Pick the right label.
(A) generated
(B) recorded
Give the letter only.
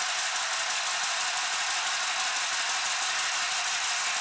B